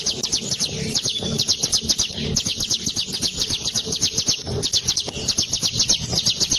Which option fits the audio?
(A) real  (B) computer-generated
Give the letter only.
A